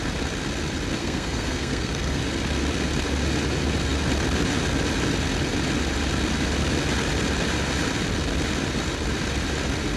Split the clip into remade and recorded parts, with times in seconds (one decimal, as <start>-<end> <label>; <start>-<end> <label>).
0.0-1.0 recorded; 1.0-2.2 remade; 2.2-10.0 recorded